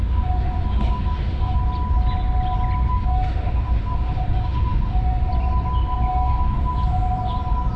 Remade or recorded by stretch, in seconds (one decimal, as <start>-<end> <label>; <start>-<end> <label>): 0.0-1.6 remade; 1.6-2.9 recorded; 2.9-5.3 remade; 5.3-6.1 recorded; 6.1-6.7 remade; 6.7-7.8 recorded